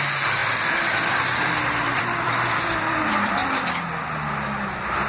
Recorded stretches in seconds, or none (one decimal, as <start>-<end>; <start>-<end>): 0.0-0.4; 3.3-5.1